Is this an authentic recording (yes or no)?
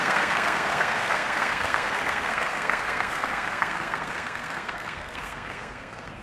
no